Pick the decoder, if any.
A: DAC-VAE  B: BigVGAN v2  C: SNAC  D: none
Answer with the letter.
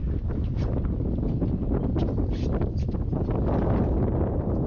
D